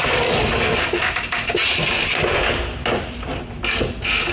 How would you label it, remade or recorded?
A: recorded